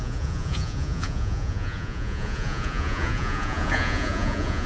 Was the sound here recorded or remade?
remade